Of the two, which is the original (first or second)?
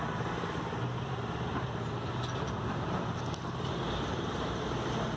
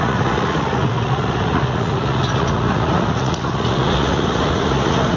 first